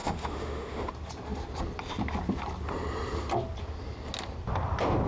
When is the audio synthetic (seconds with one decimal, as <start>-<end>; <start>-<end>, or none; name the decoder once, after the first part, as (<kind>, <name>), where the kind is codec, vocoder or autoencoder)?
0.0-0.9 (autoencoder, DAC-VAE)